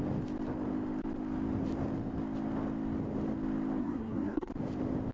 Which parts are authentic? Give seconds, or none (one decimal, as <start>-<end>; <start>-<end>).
0.0-3.8; 4.5-5.1